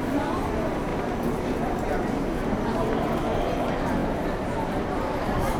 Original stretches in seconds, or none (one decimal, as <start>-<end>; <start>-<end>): 0.0-5.6